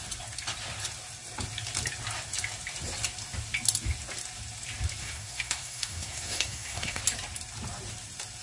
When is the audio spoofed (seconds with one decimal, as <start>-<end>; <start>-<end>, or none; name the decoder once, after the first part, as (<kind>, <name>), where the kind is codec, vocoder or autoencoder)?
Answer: 5.0-7.0 (codec, SNAC)